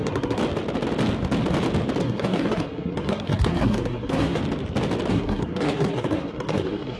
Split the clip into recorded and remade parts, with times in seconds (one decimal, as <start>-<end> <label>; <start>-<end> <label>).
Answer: 0.0-0.4 remade; 0.4-2.0 recorded; 2.0-4.4 remade; 4.4-5.1 recorded; 5.1-7.0 remade